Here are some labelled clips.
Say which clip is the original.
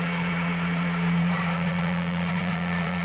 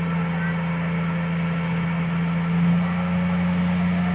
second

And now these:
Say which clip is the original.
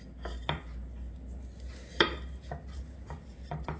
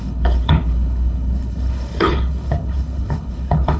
first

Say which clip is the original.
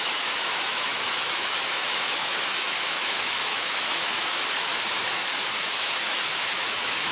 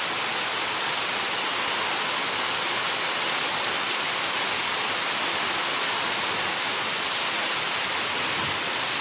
second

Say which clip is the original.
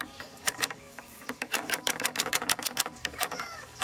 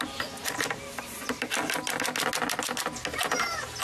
second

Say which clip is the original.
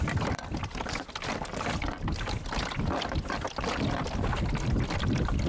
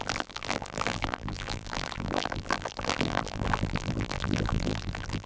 first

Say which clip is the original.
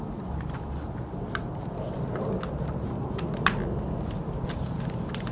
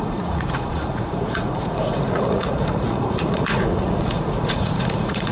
first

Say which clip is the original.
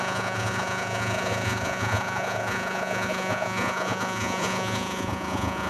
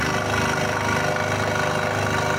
second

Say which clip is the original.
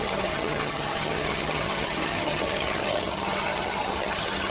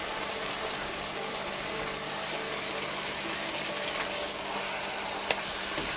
second